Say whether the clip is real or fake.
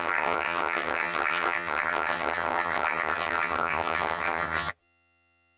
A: fake